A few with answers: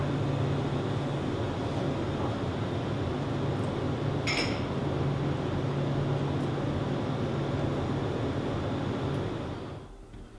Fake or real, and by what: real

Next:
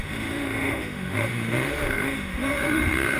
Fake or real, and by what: fake, autoencoder, DAC-VAE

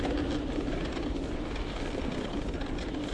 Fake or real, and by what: real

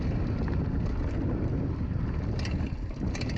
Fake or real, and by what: real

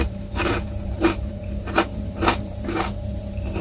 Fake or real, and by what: fake, vocoder, BigVGAN v2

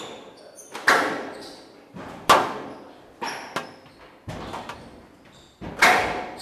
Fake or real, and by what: real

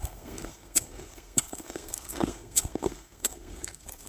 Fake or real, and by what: fake, codec, SNAC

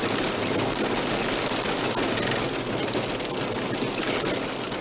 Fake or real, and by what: real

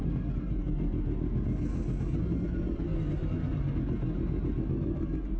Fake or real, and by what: real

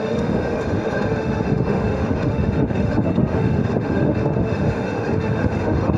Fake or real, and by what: fake, autoencoder, DAC-VAE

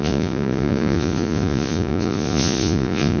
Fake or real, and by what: fake, vocoder, Vocos